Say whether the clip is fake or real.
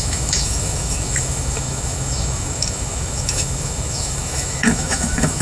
fake